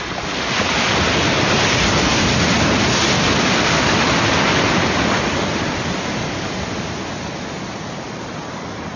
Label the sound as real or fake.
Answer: real